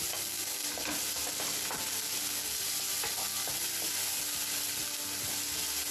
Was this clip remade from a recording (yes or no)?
no